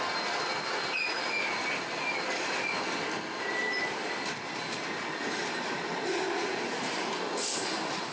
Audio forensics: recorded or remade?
recorded